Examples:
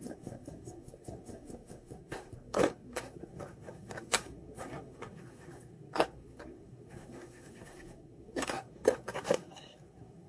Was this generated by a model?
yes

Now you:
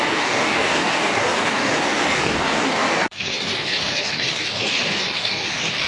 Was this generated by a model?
yes